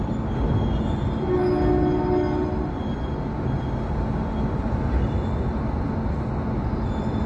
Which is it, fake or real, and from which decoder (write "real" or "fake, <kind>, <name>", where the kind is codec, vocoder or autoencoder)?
real